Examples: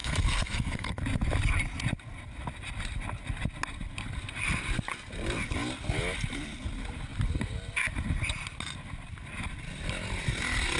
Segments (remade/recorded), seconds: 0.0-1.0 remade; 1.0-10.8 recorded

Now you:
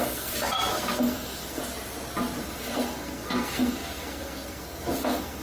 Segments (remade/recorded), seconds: 0.0-1.6 remade; 1.6-2.4 recorded; 2.4-5.4 remade

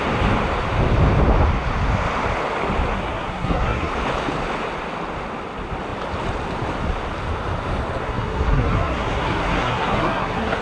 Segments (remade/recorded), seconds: 0.0-2.9 recorded; 2.9-3.9 remade; 3.9-8.0 recorded; 8.0-10.6 remade

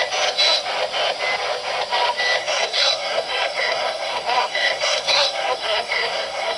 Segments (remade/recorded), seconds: 0.0-2.4 recorded; 2.4-6.6 remade

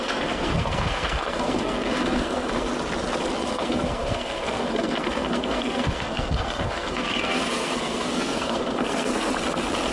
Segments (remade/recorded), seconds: 0.0-2.7 remade; 2.7-3.4 recorded; 3.4-9.3 remade; 9.3-9.9 recorded

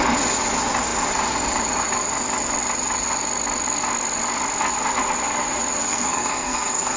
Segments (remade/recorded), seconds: 0.0-5.8 recorded; 5.8-7.0 remade